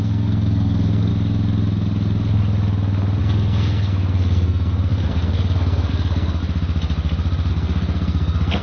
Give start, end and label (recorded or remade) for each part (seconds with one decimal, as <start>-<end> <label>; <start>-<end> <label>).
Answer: 0.0-1.1 remade; 1.1-3.2 recorded; 3.2-6.4 remade; 6.4-7.5 recorded; 7.5-8.6 remade